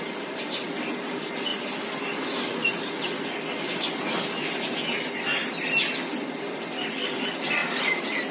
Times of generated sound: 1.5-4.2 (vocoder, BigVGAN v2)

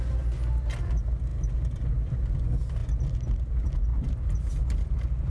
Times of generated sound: none

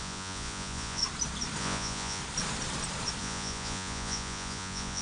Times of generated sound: 0.0-1.0 (vocoder, Vocos); 1.6-2.2; 3.2-5.0

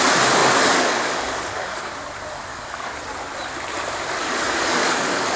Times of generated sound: 0.4-1.9 (codec, DAC); 2.5-3.0; 4.2-5.4